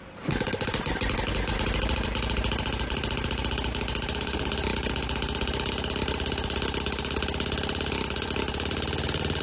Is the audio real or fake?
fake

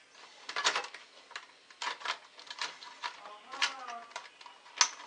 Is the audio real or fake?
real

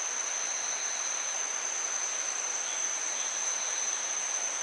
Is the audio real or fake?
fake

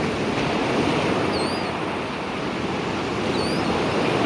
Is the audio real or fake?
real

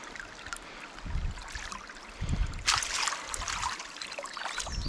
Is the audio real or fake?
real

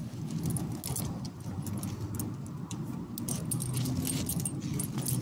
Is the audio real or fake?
real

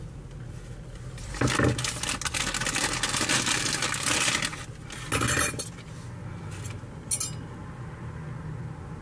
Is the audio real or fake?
real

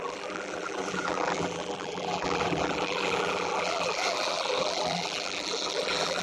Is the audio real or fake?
fake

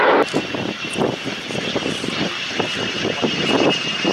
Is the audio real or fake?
real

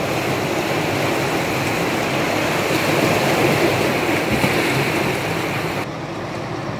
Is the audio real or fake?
real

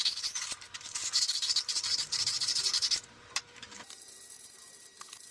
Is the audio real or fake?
fake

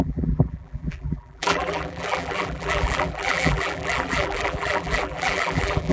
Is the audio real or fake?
fake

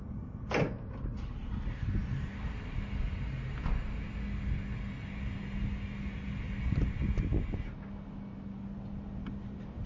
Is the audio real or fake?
real